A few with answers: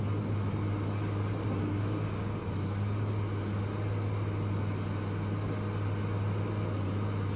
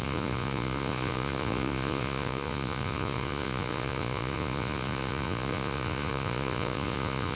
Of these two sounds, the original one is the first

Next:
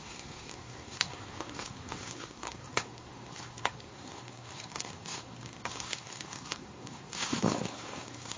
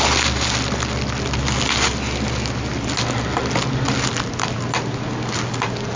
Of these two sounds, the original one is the second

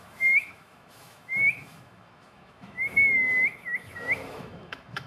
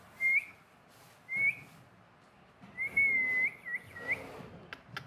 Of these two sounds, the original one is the second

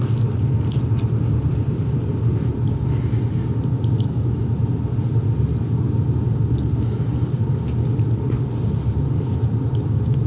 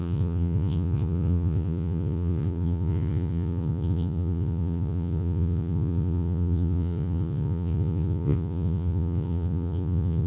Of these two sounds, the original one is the first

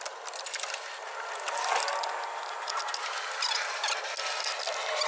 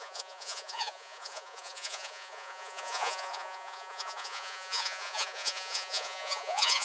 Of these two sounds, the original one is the first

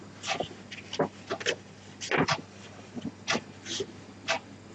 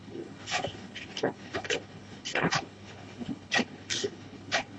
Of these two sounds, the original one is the first